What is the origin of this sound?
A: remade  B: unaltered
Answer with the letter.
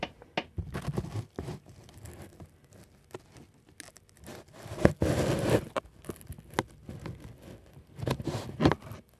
B